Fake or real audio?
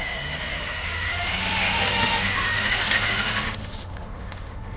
fake